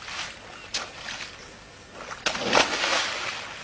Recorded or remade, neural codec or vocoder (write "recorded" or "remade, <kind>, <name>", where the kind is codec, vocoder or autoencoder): recorded